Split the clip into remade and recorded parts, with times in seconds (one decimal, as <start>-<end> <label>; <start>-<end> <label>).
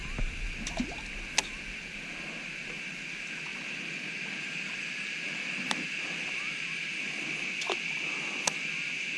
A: 0.0-9.2 recorded